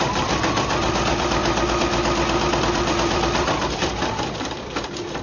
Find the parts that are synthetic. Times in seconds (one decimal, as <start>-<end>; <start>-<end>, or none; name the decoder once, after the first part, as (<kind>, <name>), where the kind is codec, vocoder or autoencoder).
0.0-1.4 (vocoder, BigVGAN v2); 2.6-5.2